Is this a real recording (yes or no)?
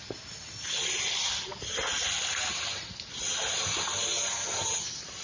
yes